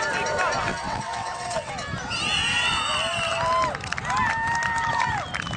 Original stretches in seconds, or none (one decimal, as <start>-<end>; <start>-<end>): 0.0-0.7; 1.7-5.6